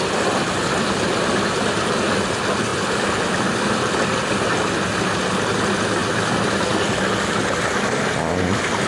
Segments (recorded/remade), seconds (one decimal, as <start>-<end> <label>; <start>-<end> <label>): 0.0-8.9 recorded